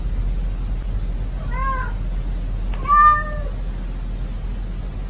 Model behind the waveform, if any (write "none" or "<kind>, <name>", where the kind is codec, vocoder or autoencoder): none